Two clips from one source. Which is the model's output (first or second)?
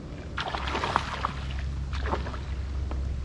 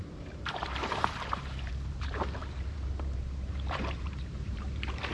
second